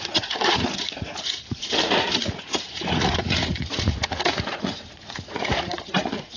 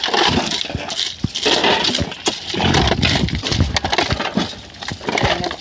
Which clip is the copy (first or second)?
first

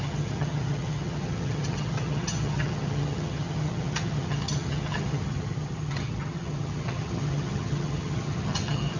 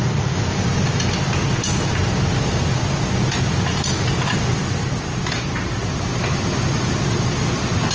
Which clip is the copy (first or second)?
first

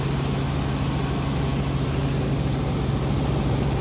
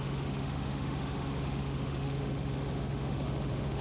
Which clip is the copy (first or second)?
second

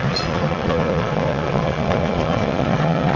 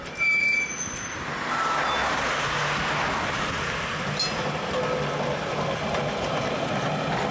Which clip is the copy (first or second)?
first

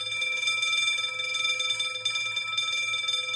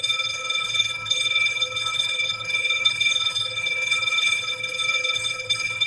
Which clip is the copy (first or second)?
second